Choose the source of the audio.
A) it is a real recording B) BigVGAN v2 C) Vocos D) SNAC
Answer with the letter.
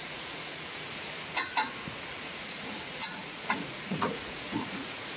C